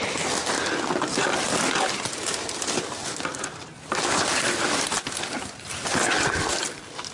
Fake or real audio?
real